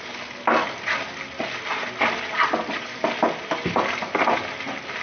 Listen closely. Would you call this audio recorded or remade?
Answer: recorded